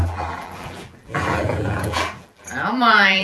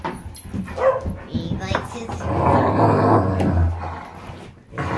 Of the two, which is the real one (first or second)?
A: second